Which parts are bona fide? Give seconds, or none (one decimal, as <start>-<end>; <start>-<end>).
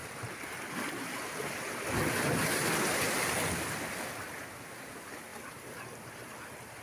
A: 0.0-5.3